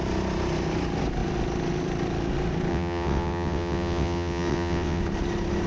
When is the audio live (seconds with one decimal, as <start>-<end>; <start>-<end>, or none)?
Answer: 0.0-2.7; 5.0-5.7